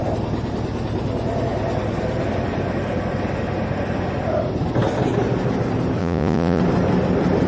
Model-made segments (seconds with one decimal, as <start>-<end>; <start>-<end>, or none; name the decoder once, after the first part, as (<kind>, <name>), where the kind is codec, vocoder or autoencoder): 6.0-6.6 (vocoder, Vocos)